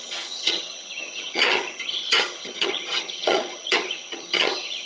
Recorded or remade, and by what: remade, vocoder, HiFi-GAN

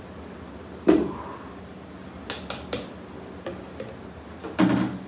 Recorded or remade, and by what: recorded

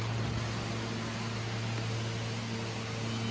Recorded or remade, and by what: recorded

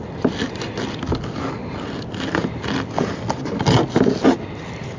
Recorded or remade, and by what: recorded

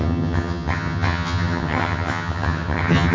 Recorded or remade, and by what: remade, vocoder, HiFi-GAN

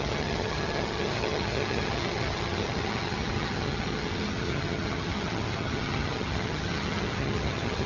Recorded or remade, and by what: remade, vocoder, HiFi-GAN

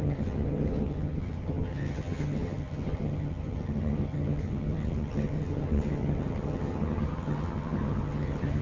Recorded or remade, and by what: remade, vocoder, HiFi-GAN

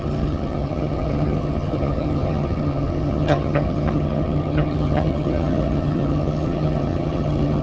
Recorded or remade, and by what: remade, vocoder, HiFi-GAN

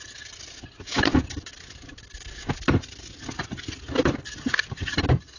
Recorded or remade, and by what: recorded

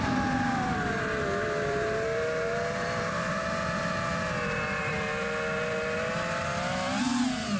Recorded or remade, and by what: recorded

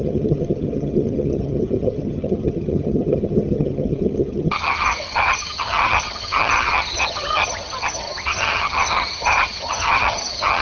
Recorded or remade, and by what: remade, vocoder, HiFi-GAN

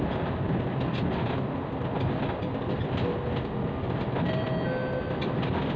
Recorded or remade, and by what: recorded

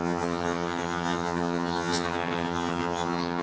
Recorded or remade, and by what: remade, vocoder, HiFi-GAN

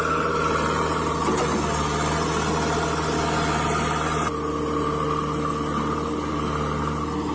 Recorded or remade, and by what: recorded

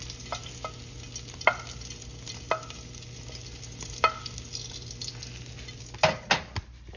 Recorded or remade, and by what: recorded